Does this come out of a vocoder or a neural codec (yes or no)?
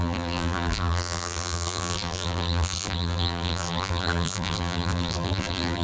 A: yes